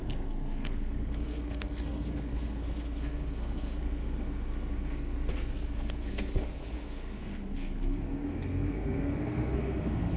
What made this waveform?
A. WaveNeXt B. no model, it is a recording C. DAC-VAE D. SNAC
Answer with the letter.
D